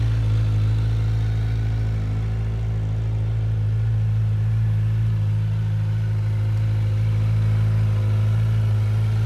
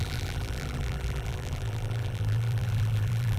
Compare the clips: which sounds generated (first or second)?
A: second